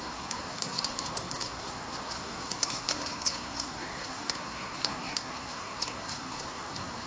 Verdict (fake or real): fake